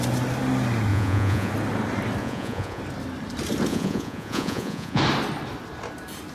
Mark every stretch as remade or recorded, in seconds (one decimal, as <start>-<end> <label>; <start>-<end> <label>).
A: 0.0-0.9 recorded; 0.9-1.5 remade; 1.5-2.2 recorded; 2.2-2.8 remade; 2.8-3.7 recorded; 3.7-5.0 remade; 5.0-6.3 recorded

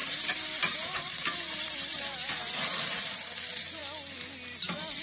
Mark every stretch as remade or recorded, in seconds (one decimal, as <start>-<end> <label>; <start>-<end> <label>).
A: 0.0-3.0 remade; 3.0-5.0 recorded